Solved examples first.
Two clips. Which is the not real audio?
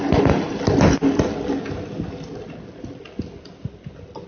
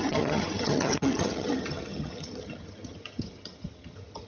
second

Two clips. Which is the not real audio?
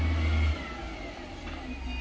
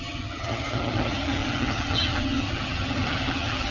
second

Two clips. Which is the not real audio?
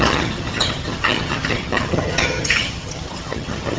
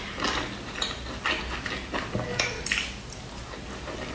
first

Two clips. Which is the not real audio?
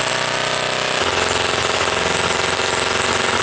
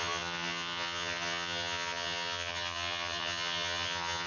second